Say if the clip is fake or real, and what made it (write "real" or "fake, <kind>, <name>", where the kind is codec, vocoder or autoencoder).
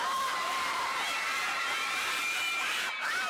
fake, vocoder, BigVGAN v2